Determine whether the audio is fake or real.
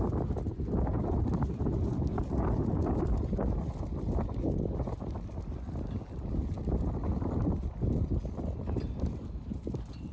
real